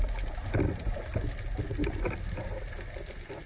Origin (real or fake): real